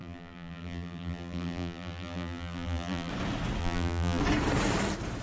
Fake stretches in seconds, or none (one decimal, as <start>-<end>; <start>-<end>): 0.0-3.1; 3.6-4.2